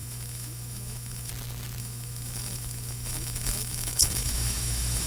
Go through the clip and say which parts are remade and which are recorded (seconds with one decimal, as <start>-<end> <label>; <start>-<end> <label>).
0.0-1.3 remade; 1.3-1.8 recorded; 1.8-5.1 remade